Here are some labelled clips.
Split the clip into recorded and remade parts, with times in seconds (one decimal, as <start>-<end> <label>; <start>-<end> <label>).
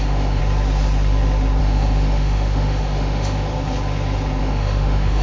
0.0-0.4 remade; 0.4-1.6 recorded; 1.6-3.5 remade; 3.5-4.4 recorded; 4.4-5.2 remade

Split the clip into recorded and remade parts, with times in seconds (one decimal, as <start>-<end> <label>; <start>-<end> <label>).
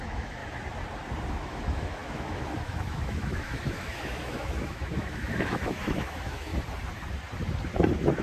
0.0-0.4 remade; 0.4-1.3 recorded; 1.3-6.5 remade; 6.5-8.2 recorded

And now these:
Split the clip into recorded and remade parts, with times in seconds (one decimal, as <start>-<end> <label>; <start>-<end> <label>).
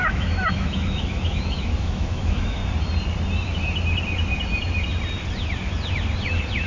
0.0-2.6 remade; 2.6-6.7 recorded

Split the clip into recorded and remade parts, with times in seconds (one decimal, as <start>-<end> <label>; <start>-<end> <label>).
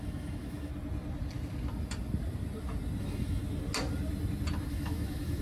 0.0-0.7 remade; 0.7-3.0 recorded; 3.0-3.4 remade; 3.4-4.7 recorded; 4.7-5.4 remade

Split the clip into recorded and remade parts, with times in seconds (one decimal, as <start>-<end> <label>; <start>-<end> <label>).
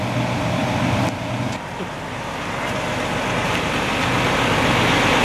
0.0-5.2 recorded